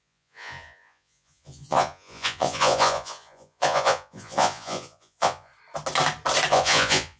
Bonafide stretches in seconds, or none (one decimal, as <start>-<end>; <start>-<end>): 5.5-6.5